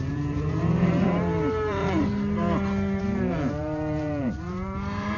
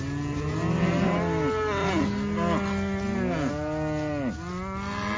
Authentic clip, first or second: second